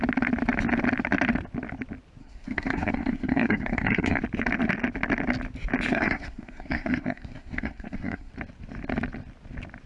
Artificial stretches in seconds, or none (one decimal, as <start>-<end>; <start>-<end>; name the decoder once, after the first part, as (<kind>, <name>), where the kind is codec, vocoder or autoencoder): 2.2-4.2 (codec, SNAC); 5.9-8.3